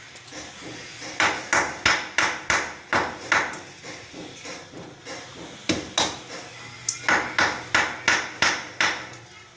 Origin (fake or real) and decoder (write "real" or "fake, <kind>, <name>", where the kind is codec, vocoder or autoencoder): real